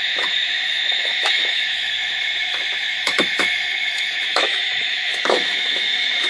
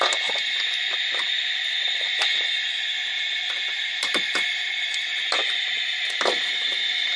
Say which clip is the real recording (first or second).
second